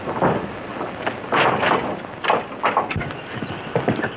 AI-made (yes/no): no